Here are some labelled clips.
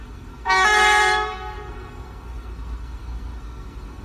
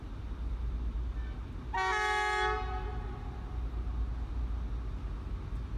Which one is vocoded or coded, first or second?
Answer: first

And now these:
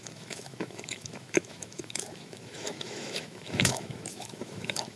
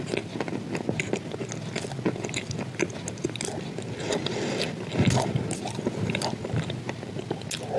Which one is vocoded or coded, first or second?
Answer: first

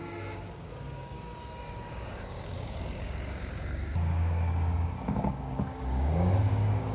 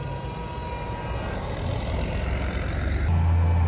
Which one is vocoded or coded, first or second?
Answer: first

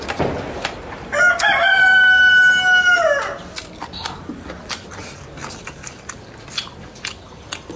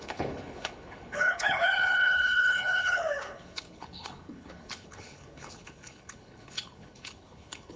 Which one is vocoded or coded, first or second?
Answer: second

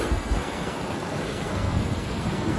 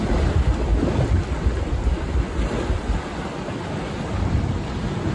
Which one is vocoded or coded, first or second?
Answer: first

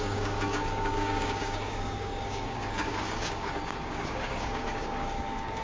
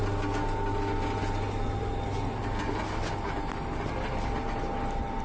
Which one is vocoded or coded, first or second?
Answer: first